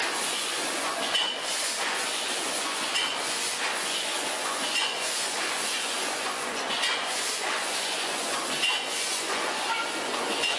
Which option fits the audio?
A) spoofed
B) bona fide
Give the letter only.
A